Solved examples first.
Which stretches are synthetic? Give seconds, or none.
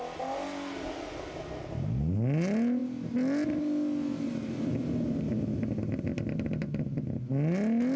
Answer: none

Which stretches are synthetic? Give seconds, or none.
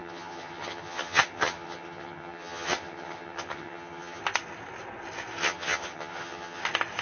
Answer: 0.0-4.2 (vocoder, HiFi-GAN); 5.4-6.6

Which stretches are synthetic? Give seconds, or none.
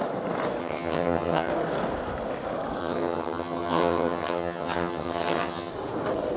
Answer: 0.6-1.5 (vocoder, HiFi-GAN); 2.8-5.7